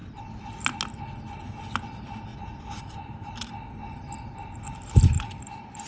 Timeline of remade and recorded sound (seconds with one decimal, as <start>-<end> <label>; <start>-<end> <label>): 0.0-2.3 recorded; 2.3-5.9 remade